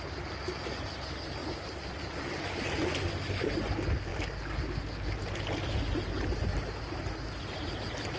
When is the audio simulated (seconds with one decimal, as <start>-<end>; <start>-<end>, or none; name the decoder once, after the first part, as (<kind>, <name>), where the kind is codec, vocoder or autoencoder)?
none